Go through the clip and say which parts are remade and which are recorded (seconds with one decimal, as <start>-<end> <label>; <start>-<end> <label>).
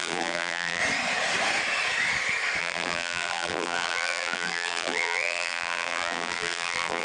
0.0-0.8 remade; 0.8-2.6 recorded; 2.6-7.0 remade